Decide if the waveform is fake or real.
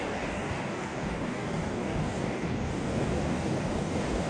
fake